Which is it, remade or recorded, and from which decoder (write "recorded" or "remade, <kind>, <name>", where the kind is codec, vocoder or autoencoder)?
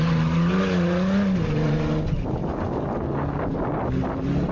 recorded